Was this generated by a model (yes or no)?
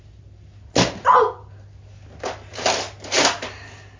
no